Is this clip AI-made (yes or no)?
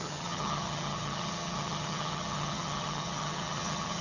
yes